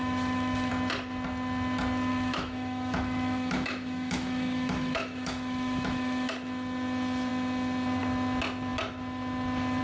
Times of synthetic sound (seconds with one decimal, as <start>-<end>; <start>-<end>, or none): 0.0-0.7; 2.1-6.3